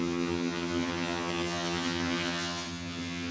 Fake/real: fake